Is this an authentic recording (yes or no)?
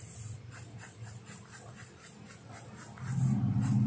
yes